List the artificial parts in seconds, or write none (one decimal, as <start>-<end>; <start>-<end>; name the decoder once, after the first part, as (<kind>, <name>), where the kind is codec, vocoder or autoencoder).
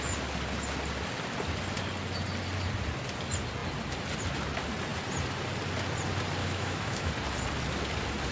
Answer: 6.4-7.1 (autoencoder, DAC-VAE)